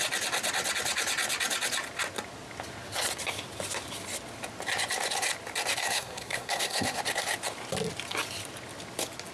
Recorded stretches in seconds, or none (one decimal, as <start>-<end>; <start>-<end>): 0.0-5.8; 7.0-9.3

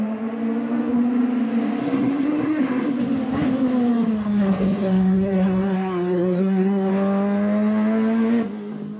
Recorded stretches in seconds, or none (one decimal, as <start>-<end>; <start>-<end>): 0.0-1.8; 3.0-3.9; 6.9-9.0

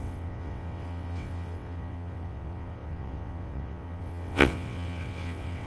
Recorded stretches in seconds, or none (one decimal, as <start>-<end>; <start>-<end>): none

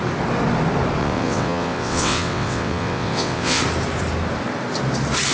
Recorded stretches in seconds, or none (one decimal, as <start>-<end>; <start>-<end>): 0.0-1.0; 3.6-5.3

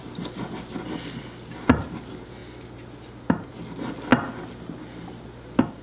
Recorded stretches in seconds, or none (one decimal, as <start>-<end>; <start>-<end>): 0.0-5.8